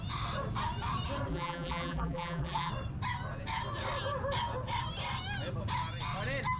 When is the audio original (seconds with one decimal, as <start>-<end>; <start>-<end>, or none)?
0.0-1.3; 2.7-6.6